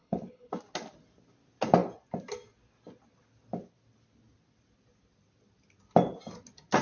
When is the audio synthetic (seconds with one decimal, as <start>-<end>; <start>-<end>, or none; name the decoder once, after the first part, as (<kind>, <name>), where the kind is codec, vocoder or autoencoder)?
0.0-0.5 (codec, HILCodec)